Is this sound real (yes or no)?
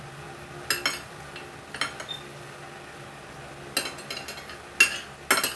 yes